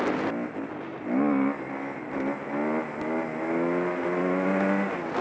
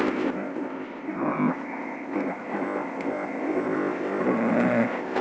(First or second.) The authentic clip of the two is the first